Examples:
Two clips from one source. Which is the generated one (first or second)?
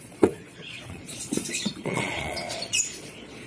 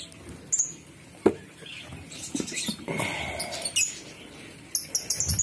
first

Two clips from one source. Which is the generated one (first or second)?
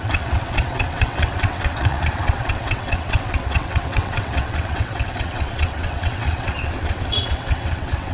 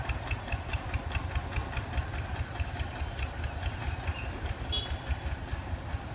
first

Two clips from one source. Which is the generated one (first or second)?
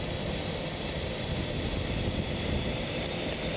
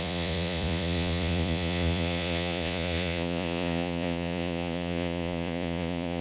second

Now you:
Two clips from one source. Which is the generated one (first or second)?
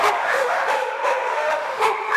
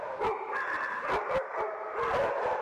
first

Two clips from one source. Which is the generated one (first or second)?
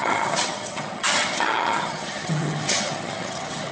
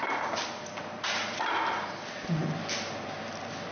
first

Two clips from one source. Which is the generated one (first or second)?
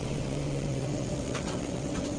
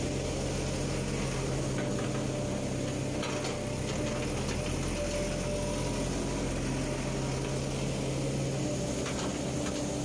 first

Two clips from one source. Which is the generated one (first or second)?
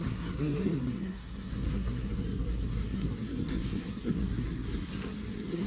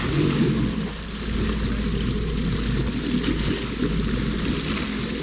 first